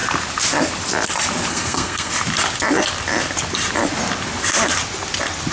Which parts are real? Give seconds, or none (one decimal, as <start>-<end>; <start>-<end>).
0.0-1.5; 2.1-5.5